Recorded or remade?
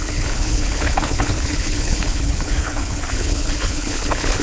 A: remade